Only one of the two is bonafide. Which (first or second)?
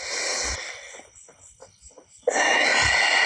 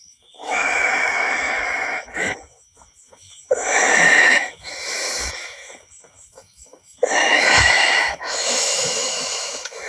first